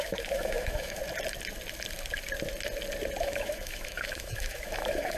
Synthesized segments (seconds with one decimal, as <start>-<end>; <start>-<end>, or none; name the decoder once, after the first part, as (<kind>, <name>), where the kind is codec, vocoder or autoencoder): 0.0-1.0 (autoencoder, DAC-VAE); 3.2-5.2